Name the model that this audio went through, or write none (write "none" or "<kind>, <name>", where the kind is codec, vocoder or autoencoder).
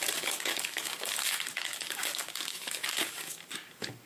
codec, DAC